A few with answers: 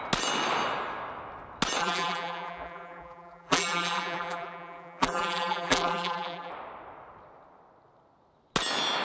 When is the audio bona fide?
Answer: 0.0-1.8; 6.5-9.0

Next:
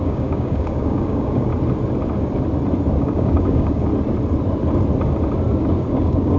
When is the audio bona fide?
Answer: 1.5-3.0; 3.9-5.9

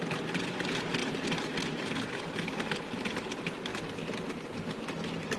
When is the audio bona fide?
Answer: 0.0-1.0; 3.3-5.4

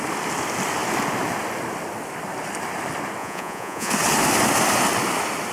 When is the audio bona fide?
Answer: 0.0-3.2; 3.9-5.5